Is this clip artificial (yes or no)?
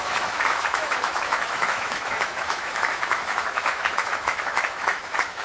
yes